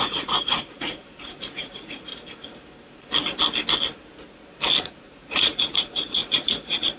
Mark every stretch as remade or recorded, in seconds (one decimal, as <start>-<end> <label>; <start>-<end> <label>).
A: 0.0-2.1 remade; 2.1-4.8 recorded; 4.8-7.0 remade